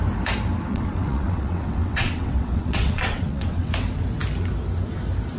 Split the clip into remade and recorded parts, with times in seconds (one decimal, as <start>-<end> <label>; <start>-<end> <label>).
0.0-0.7 recorded; 0.7-3.7 remade; 3.7-5.4 recorded